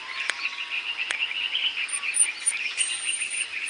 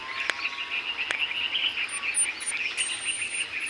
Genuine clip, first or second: second